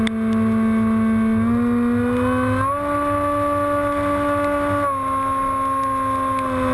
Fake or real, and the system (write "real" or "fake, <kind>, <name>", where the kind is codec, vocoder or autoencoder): real